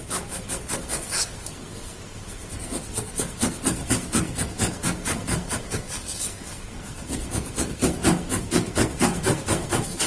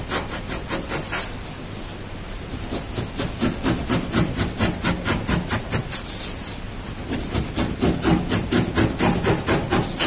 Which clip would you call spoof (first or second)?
first